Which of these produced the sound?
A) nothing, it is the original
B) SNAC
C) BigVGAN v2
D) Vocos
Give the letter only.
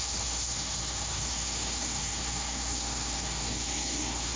B